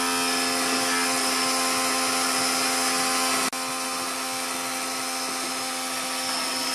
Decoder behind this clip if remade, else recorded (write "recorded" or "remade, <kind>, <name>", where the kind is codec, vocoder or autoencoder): recorded